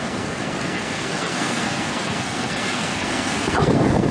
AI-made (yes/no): yes